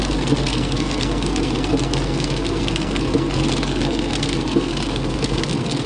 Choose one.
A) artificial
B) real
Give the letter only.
A